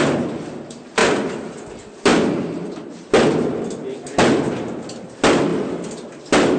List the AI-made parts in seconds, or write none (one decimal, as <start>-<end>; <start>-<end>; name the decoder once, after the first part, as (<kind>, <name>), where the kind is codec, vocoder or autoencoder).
2.1-3.1 (vocoder, BigVGAN v2); 5.5-6.6